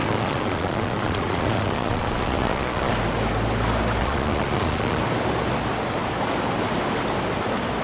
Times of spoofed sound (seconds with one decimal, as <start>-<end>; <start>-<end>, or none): 0.0-2.9; 4.0-5.0